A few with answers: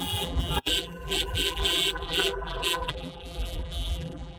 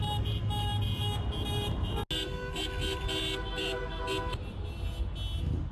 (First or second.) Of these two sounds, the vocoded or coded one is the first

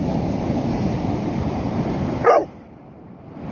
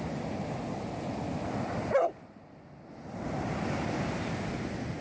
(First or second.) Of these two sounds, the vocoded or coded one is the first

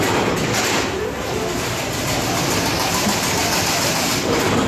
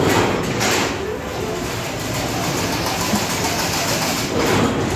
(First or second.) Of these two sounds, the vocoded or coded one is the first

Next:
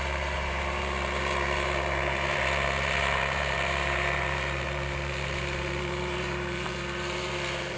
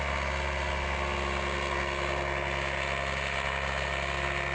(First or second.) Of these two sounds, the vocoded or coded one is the first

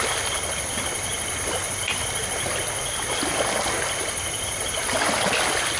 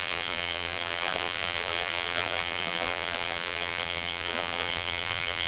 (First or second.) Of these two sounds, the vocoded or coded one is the second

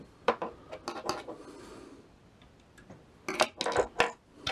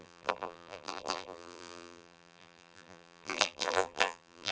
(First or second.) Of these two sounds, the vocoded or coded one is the second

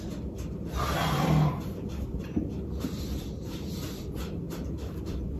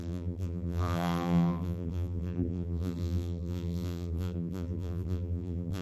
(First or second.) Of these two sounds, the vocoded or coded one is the second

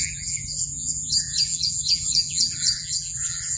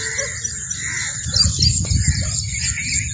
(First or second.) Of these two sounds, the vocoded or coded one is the first